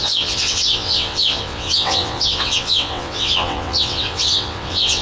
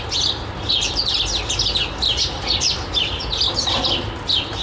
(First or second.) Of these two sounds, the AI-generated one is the first